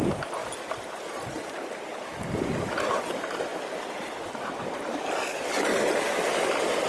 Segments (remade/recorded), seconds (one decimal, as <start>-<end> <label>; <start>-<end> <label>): 0.0-0.4 recorded; 0.4-1.9 remade; 1.9-3.5 recorded; 3.5-4.5 remade; 4.5-6.9 recorded